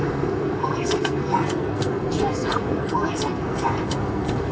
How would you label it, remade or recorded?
remade